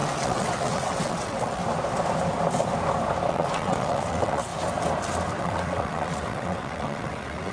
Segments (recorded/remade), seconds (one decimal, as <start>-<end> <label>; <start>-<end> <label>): 0.0-1.6 remade; 1.6-3.3 recorded; 3.3-4.5 remade; 4.5-5.4 recorded; 5.4-7.5 remade